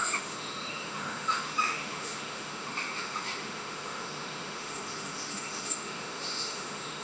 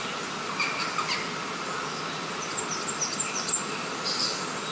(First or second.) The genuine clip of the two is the second